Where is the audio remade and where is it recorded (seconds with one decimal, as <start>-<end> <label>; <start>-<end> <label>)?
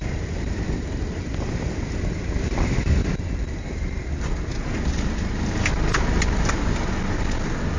0.0-7.8 recorded